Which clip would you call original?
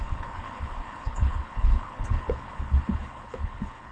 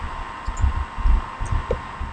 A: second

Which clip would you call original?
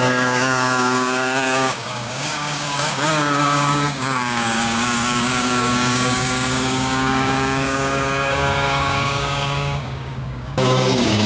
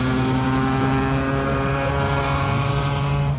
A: second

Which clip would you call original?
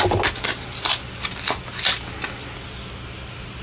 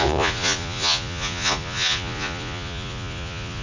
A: first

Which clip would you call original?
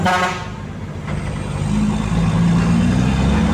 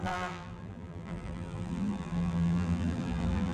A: first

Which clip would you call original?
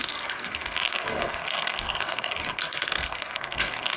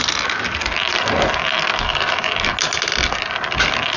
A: second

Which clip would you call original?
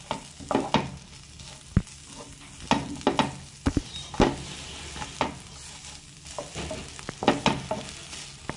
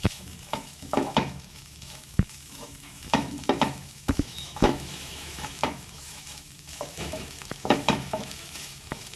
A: first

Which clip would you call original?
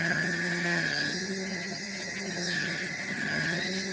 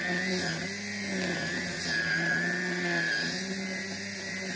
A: second